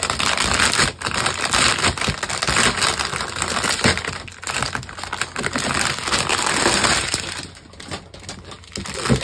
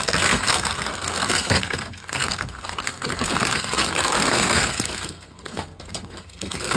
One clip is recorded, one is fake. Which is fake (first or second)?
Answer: second